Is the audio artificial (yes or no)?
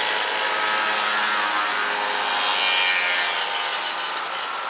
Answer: no